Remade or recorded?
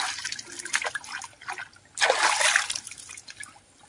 recorded